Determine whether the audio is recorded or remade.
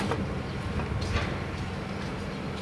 recorded